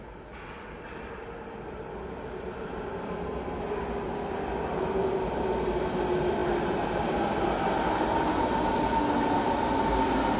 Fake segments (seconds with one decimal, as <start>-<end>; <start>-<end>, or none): none